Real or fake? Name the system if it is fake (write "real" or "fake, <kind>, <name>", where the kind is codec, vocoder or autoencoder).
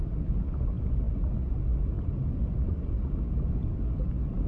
real